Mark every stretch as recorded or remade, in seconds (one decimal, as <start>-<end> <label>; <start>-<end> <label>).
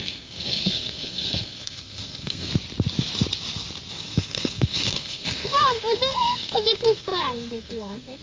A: 0.0-2.5 remade; 2.5-3.9 recorded; 3.9-8.2 remade